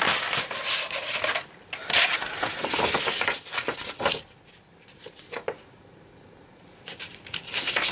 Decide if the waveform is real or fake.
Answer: real